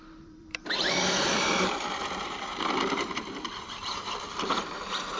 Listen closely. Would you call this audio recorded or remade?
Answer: remade